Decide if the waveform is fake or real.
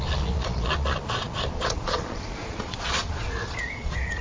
fake